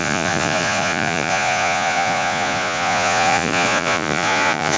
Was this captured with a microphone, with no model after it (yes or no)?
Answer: no